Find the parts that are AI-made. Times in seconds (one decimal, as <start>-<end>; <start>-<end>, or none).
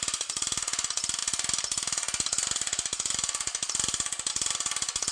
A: none